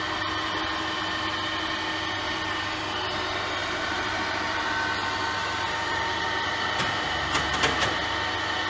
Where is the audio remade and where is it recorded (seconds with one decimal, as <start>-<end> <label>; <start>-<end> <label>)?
0.0-3.6 recorded; 3.6-4.7 remade; 4.7-5.4 recorded; 5.4-6.8 remade; 6.8-8.7 recorded